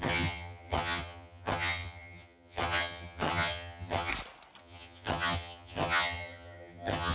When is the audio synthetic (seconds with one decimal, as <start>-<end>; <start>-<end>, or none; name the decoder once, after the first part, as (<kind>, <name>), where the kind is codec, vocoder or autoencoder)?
0.0-4.1 (vocoder, HiFi-GAN); 4.6-7.1